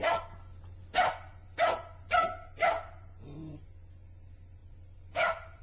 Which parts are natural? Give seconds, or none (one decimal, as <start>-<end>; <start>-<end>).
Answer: 0.0-4.6